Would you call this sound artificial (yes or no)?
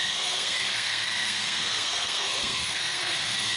yes